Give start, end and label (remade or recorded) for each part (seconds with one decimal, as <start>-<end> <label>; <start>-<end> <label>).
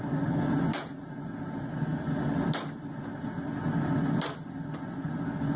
0.0-5.6 recorded